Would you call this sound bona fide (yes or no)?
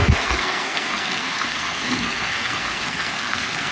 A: no